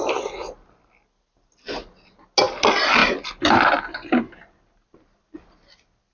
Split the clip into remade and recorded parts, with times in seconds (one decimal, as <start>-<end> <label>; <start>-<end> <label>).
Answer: 0.0-6.1 recorded